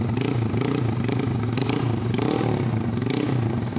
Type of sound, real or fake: real